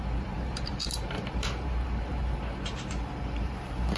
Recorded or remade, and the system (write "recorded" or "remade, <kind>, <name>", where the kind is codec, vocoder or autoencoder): remade, vocoder, BigVGAN v2